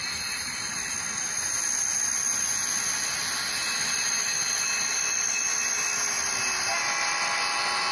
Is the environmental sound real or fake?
real